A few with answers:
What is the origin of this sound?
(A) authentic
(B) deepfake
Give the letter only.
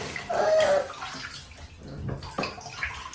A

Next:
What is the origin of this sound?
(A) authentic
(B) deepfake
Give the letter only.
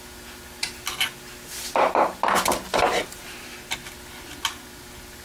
A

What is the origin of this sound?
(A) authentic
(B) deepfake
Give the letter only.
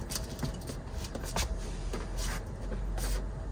A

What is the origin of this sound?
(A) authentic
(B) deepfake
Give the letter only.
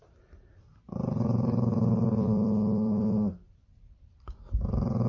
B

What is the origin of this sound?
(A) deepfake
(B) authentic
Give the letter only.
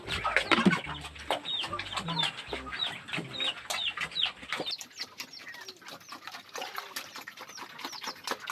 B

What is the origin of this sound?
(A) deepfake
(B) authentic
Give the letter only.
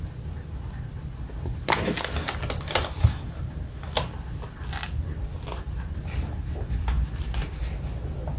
B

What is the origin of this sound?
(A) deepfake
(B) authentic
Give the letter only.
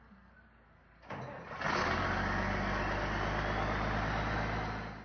B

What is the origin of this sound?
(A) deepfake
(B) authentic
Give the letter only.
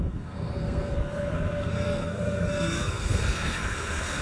A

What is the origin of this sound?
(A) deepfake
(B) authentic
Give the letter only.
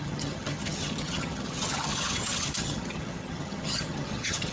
A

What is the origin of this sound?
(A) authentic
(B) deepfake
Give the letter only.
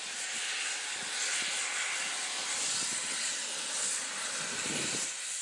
A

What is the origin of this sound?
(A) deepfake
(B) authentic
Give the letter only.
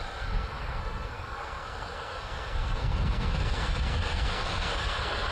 A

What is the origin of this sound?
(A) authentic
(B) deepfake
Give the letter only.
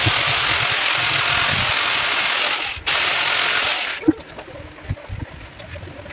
A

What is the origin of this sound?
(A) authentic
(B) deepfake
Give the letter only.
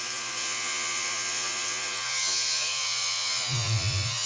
B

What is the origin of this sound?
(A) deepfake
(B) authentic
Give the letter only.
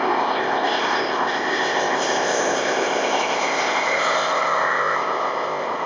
A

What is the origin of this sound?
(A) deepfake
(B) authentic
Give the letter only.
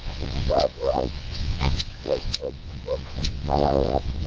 A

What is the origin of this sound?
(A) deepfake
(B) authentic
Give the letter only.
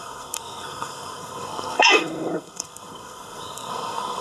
A